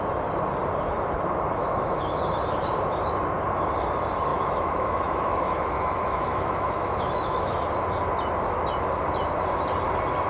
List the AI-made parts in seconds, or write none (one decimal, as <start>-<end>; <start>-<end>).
1.6-2.2; 4.3-7.6